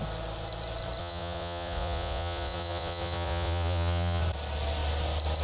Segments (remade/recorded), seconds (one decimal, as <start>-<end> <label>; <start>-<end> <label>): 0.0-1.0 recorded; 1.0-4.2 remade; 4.2-5.4 recorded